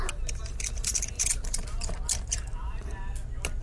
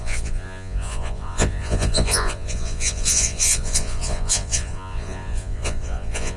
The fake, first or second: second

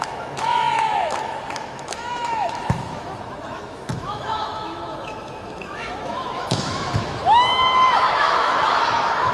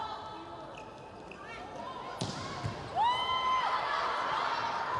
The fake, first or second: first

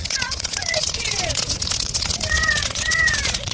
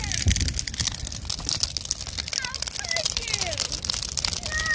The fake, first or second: first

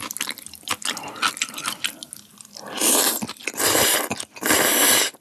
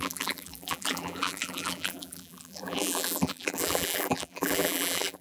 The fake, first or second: second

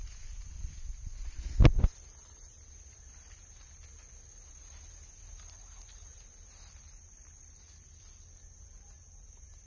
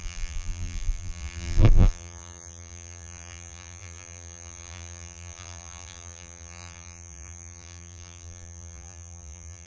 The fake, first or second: second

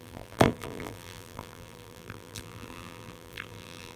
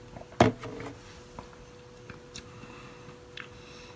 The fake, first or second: first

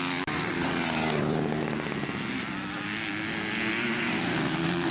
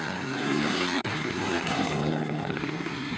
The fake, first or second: second